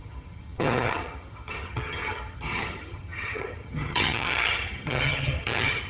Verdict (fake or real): fake